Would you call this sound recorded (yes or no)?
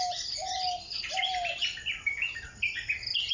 yes